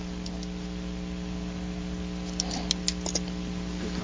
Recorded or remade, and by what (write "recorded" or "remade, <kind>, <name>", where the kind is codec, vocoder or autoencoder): recorded